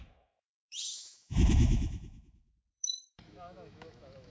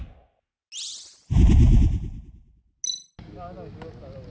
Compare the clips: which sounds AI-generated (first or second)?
first